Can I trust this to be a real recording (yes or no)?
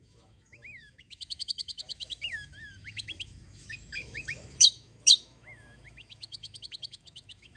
no